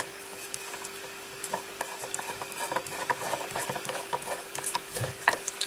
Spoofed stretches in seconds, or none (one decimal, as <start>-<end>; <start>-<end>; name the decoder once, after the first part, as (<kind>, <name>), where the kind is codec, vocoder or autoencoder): 0.0-5.7 (codec, DAC)